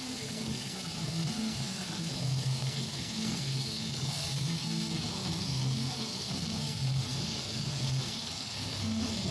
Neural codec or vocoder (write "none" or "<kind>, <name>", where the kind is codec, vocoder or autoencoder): codec, SNAC